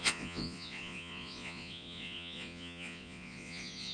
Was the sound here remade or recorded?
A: remade